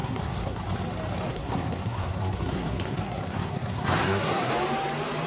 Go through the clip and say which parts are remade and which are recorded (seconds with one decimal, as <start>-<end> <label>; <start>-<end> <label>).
0.0-0.6 remade; 0.6-1.3 recorded; 1.3-4.5 remade; 4.5-5.3 recorded